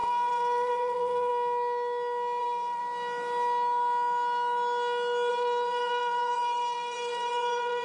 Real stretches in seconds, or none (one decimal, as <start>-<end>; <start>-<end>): 1.3-2.4; 2.8-5.3